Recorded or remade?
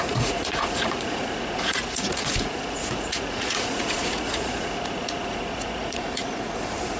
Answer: remade